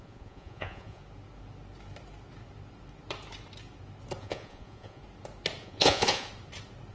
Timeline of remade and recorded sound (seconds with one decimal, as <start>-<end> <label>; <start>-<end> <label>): 0.0-1.0 remade; 1.0-4.2 recorded; 4.2-5.0 remade; 5.0-5.6 recorded; 5.6-6.3 remade; 6.3-6.9 recorded